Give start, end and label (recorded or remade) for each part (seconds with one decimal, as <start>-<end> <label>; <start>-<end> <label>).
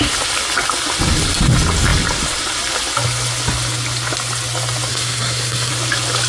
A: 0.0-4.9 recorded; 4.9-5.7 remade; 5.7-6.3 recorded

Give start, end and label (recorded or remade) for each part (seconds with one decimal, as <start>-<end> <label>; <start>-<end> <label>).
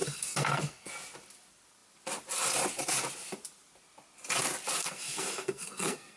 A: 0.0-0.9 remade; 0.9-4.8 recorded; 4.8-6.2 remade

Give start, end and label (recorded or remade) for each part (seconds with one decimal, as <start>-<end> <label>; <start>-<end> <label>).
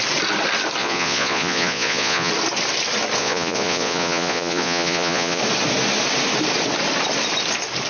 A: 0.0-0.8 recorded; 0.8-2.3 remade; 2.3-3.2 recorded; 3.2-5.4 remade; 5.4-7.9 recorded